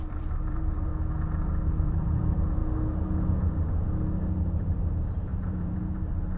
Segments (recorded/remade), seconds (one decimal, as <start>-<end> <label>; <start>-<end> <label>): 0.0-0.9 remade; 0.9-1.7 recorded; 1.7-2.6 remade; 2.6-4.4 recorded; 4.4-6.4 remade